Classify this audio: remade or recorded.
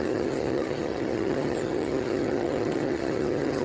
remade